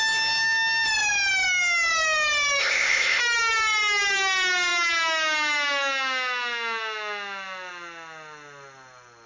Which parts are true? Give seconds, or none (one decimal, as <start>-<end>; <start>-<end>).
0.0-2.6; 3.2-9.3